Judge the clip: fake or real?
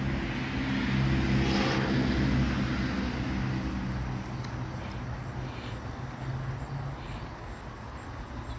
real